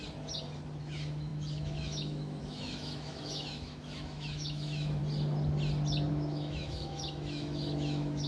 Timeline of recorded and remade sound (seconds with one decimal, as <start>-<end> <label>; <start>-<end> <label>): 0.0-0.8 recorded; 0.8-5.0 remade; 5.0-6.1 recorded; 6.1-8.3 remade